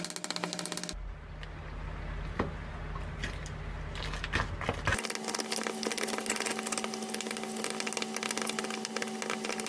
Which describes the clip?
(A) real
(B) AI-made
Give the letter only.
A